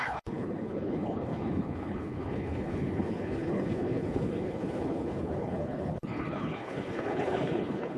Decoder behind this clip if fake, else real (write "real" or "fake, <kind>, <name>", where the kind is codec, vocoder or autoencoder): fake, codec, HILCodec